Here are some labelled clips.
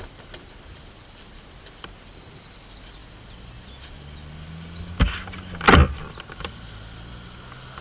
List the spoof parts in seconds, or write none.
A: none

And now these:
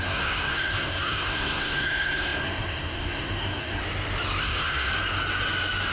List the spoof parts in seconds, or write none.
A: 0.0-3.8; 4.4-4.9

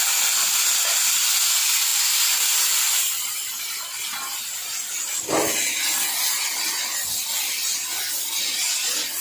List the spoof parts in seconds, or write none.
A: none

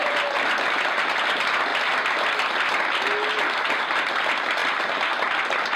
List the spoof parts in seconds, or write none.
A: none

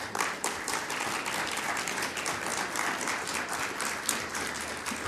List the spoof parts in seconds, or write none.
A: none

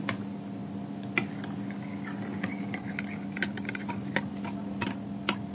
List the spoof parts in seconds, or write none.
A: none